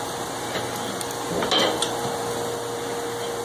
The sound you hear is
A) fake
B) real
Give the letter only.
B